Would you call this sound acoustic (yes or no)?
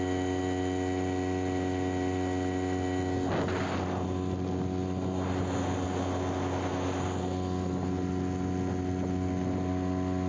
yes